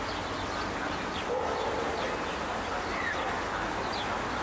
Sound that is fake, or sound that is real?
real